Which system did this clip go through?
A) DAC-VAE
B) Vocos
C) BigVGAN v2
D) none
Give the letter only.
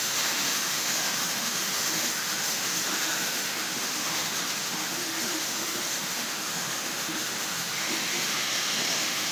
A